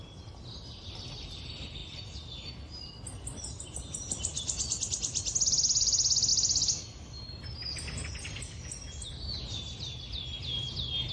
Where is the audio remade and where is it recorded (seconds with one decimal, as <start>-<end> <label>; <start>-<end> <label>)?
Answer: 0.0-11.1 recorded